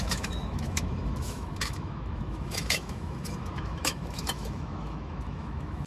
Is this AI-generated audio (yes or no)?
yes